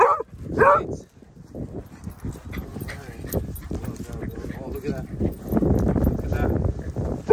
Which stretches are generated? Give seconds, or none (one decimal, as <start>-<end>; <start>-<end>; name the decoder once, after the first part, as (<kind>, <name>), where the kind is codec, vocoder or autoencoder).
2.7-7.3 (vocoder, BigVGAN v2)